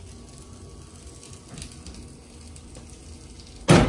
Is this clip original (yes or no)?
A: yes